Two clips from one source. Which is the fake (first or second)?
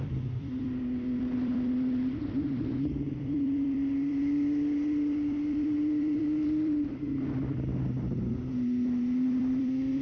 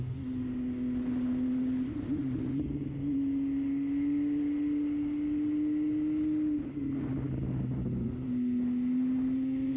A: first